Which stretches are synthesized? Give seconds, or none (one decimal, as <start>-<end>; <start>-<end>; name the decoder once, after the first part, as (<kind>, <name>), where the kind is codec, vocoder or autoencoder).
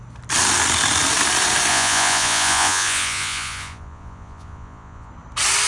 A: 1.7-5.1 (vocoder, Vocos)